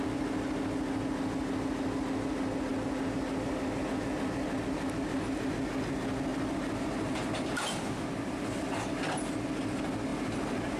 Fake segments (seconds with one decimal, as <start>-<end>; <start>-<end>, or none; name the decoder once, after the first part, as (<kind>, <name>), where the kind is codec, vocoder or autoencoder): 6.3-9.3 (vocoder, BigVGAN v2)